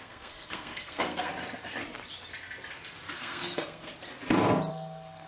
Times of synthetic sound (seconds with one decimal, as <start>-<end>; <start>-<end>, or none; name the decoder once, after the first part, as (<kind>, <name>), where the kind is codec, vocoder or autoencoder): 0.0-1.3 (codec, SNAC); 3.1-3.9; 4.7-5.3